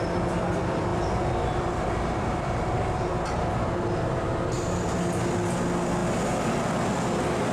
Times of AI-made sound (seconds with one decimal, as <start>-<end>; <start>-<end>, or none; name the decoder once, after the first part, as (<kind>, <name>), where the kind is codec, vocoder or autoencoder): 0.9-3.1 (vocoder, BigVGAN v2); 6.0-6.5